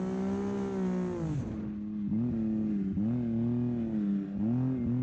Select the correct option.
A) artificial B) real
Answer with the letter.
B